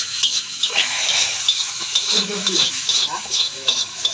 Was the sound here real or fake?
fake